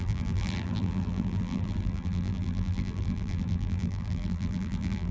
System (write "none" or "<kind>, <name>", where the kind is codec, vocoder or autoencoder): vocoder, BigVGAN v2